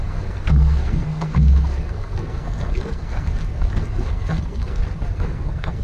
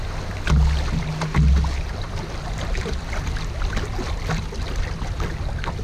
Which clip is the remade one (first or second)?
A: first